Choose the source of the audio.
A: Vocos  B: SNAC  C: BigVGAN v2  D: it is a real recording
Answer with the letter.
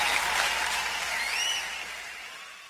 D